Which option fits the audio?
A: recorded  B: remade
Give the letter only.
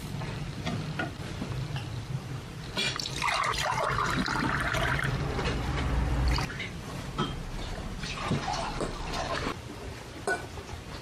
B